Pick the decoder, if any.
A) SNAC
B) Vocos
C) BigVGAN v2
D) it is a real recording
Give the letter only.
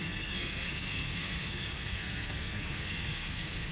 A